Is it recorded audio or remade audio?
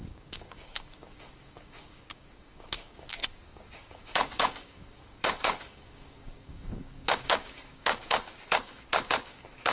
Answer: remade